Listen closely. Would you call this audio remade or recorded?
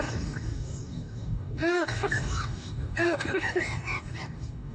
remade